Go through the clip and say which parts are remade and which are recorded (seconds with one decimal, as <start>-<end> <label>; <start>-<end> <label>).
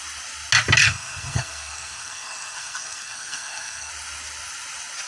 0.0-0.8 recorded; 0.8-3.9 remade; 3.9-5.1 recorded